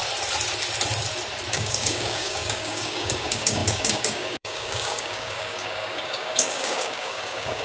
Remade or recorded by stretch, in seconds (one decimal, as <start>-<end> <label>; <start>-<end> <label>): 0.0-1.5 recorded; 1.5-7.6 remade